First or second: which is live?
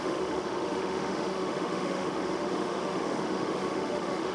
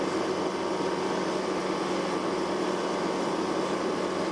second